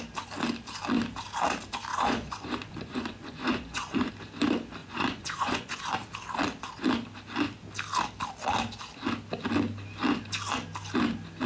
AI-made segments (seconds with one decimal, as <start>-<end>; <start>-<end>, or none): 1.9-4.1; 4.8-5.8